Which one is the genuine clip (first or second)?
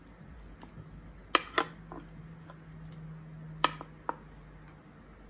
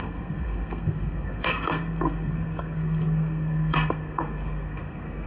first